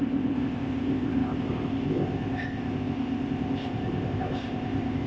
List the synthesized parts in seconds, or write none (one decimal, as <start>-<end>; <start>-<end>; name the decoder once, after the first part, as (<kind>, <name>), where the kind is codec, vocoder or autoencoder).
0.0-5.1 (codec, ZipCodec)

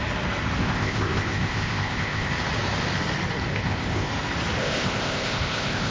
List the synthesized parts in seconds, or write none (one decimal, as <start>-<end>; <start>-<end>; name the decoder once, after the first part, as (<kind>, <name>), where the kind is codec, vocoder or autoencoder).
0.6-2.3 (codec, ZipCodec); 3.5-4.1; 4.6-5.9

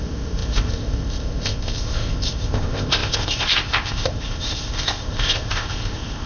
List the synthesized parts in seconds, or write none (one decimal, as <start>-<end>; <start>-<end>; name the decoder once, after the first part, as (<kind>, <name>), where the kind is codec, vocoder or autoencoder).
0.0-6.3 (codec, ZipCodec)

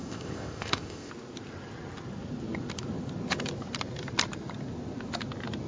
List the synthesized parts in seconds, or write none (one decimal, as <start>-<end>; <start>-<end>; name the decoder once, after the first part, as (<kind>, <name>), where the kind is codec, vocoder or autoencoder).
0.0-1.1 (codec, ZipCodec)

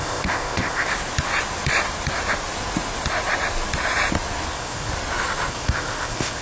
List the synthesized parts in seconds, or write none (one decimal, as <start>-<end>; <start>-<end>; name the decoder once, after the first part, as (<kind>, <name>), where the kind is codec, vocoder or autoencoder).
0.0-0.9 (codec, ZipCodec); 4.5-4.9; 5.5-6.4

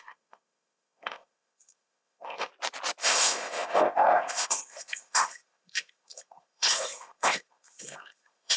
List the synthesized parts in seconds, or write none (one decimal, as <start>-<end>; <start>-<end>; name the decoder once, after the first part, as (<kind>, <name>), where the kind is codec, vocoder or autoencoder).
0.0-2.5 (codec, ZipCodec); 3.0-8.6

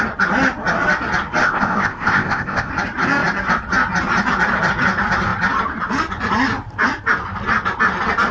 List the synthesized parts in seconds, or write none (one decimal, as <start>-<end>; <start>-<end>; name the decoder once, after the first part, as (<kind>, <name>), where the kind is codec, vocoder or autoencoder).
1.4-2.7 (codec, ZipCodec)

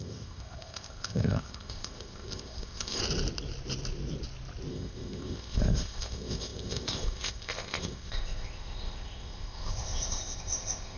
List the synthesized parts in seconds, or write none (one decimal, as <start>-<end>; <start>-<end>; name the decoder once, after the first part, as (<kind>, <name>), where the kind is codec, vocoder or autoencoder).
0.0-3.0 (codec, ZipCodec); 4.7-11.0